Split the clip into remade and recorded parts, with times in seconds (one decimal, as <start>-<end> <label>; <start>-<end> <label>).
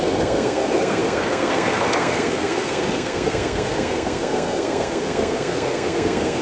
0.0-6.4 remade